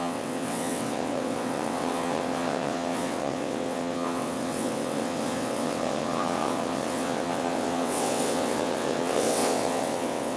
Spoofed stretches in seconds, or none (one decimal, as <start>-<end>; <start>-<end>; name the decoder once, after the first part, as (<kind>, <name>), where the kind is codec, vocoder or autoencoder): 0.0-10.4 (vocoder, WaveNeXt)